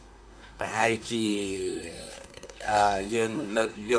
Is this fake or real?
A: fake